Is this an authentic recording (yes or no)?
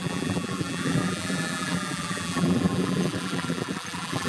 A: no